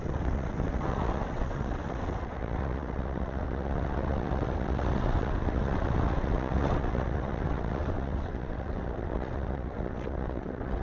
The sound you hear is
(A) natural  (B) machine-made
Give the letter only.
B